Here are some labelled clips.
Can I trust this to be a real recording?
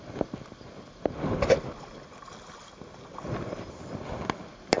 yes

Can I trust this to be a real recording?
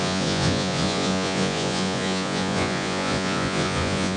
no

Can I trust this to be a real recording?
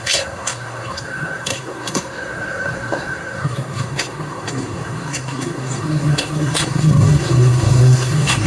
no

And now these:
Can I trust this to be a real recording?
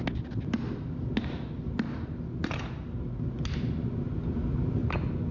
yes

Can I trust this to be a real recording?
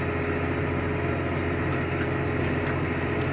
yes